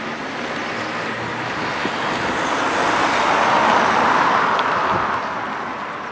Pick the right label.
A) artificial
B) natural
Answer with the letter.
B